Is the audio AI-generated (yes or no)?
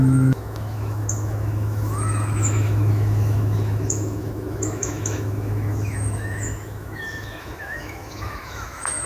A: yes